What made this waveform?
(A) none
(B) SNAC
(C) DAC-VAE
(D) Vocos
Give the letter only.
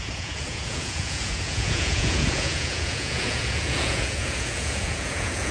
D